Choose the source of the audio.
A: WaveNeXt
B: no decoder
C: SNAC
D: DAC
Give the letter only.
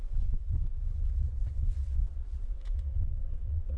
A